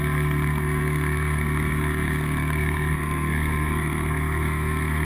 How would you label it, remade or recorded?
remade